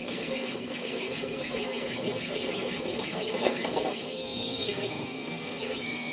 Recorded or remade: remade